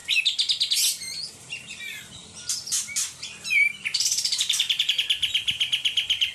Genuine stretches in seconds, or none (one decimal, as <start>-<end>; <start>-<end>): 0.0-1.3